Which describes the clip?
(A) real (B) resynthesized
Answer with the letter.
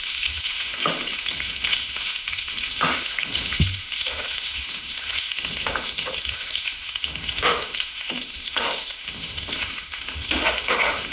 B